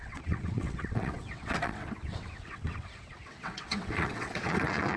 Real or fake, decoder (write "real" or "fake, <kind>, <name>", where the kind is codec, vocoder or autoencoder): fake, vocoder, WaveNeXt